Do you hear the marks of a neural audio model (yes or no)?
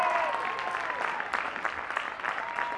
no